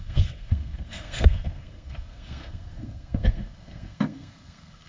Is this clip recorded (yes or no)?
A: no